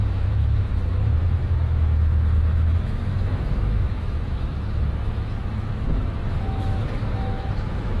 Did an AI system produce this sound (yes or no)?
yes